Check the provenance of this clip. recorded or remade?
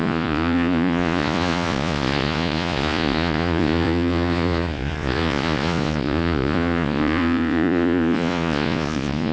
remade